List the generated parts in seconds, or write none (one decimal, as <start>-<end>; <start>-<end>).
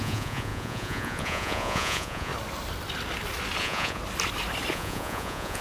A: 0.0-2.3; 3.6-4.0; 4.7-5.6